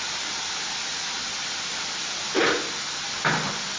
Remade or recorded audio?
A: recorded